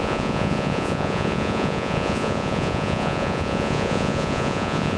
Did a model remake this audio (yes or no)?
yes